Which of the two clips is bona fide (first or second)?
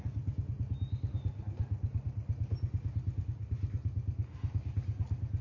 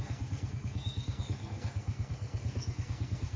first